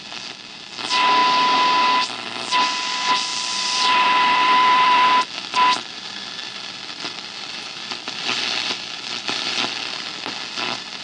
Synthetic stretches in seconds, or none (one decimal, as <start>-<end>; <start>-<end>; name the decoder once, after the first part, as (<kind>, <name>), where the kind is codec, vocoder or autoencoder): 3.3-5.1 (vocoder, BigVGAN v2); 6.4-9.8